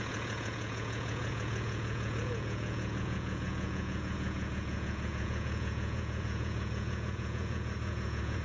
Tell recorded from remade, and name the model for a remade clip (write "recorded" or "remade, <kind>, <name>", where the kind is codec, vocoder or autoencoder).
remade, vocoder, Vocos